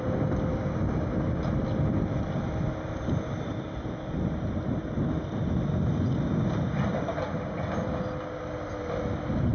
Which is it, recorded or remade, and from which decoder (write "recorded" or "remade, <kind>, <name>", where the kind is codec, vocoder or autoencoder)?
recorded